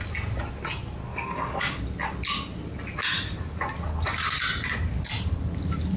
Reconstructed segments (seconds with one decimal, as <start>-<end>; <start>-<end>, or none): 1.1-1.8